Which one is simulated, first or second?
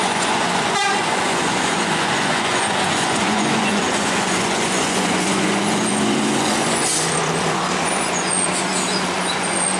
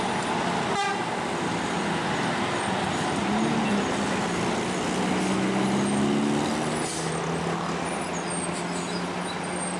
first